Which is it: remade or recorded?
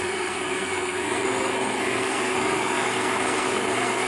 remade